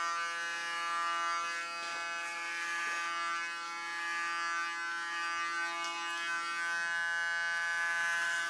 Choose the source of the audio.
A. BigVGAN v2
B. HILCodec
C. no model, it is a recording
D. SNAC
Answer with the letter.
C